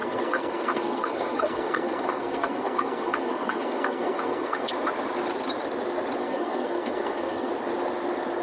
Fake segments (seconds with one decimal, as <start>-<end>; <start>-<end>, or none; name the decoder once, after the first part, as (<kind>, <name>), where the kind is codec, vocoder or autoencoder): 0.0-4.7 (codec, SNAC); 6.2-7.5